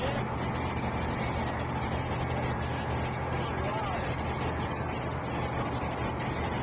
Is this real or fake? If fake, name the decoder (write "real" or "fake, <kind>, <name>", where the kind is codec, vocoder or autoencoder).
real